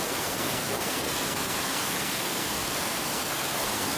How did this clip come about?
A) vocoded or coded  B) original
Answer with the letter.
A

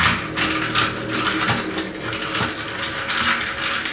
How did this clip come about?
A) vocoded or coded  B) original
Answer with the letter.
B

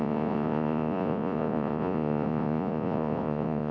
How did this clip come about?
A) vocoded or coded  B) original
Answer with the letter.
A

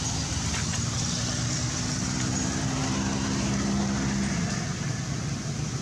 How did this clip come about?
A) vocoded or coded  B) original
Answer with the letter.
B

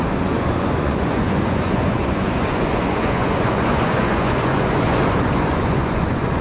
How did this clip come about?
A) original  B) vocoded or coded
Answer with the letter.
B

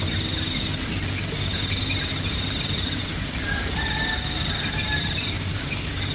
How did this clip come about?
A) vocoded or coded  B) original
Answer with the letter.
B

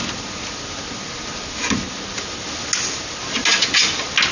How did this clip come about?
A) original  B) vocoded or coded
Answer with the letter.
A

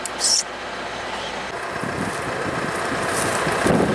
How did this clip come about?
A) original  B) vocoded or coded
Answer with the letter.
A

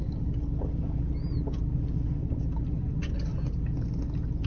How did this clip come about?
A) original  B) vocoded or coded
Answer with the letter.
A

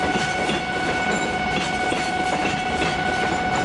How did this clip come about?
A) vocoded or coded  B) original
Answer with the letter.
B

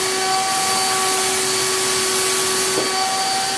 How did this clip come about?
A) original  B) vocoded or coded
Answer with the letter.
A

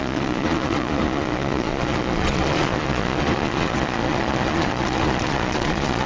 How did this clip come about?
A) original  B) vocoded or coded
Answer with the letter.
B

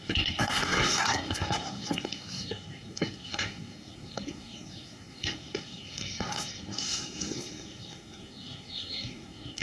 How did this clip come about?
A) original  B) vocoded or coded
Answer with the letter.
B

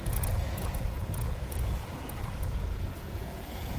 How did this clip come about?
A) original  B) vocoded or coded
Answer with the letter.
B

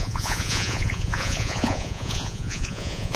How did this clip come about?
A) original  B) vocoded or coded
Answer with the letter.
B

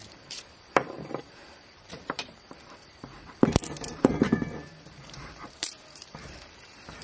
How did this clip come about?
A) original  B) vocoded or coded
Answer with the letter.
B